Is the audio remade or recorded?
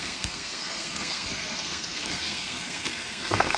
remade